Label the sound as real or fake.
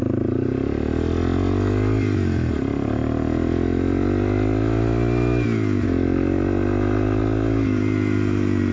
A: real